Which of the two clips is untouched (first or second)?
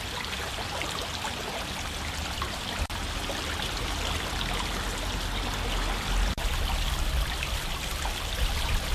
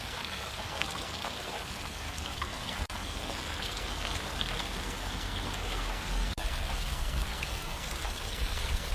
first